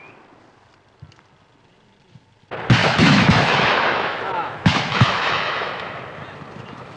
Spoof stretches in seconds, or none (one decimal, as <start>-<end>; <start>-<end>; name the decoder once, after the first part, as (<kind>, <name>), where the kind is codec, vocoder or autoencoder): 2.8-6.0 (autoencoder, DAC-VAE)

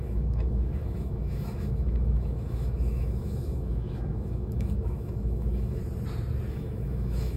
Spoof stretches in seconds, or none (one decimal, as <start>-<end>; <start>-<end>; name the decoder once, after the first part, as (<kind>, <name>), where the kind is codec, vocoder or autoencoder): 0.0-5.8 (autoencoder, DAC-VAE); 6.5-7.4